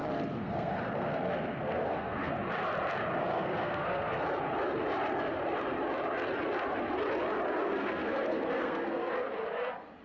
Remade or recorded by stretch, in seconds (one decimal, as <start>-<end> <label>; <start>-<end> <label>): 0.0-2.3 remade; 2.3-3.2 recorded; 3.2-4.2 remade; 4.2-7.6 recorded; 7.6-9.1 remade; 9.1-10.0 recorded